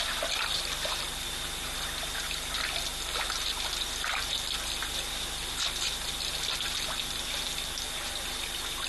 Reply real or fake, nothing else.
real